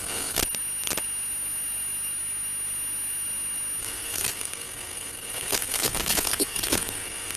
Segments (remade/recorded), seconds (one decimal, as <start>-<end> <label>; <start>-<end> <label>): 0.0-0.4 remade; 0.4-3.8 recorded; 3.8-7.4 remade